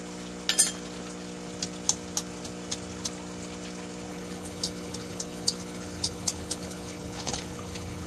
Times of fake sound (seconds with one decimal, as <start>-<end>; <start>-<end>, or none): 4.1-8.1